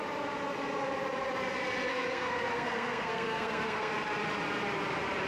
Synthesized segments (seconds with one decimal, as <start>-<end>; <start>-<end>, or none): 1.9-3.9